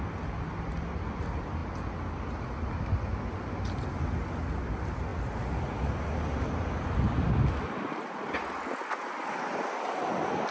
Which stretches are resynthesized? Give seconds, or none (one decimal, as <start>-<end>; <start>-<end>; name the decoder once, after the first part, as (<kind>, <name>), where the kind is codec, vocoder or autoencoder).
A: none